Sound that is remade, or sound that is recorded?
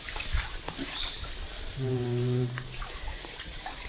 remade